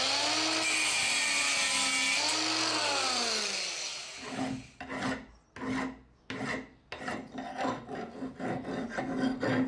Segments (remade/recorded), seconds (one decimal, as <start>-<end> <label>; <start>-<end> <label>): 0.0-9.7 recorded